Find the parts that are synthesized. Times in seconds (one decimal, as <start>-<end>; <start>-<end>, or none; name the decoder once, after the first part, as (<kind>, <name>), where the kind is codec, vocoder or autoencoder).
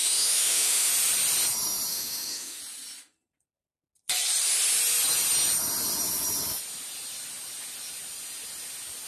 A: 0.0-0.9 (autoencoder, DAC-VAE); 1.9-2.6